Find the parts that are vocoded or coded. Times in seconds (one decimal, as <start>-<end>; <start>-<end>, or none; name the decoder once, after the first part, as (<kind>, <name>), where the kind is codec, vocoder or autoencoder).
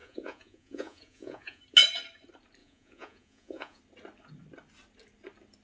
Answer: 0.0-1.6 (vocoder, Vocos); 2.6-3.8